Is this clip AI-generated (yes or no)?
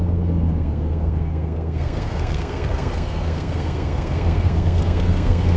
yes